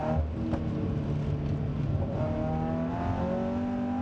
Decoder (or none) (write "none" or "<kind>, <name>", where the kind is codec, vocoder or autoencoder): none